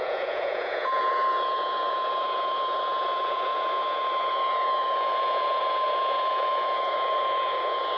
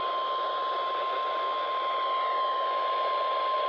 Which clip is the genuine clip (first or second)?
second